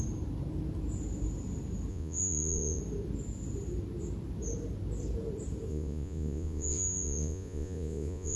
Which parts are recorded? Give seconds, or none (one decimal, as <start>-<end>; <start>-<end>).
0.0-1.9; 2.8-5.7